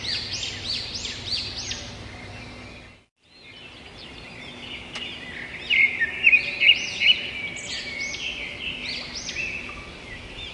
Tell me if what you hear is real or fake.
real